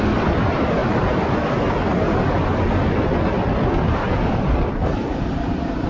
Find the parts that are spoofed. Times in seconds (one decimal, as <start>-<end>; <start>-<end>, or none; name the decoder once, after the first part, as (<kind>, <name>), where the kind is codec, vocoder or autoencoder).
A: 0.0-0.8 (vocoder, BigVGAN v2); 4.3-5.9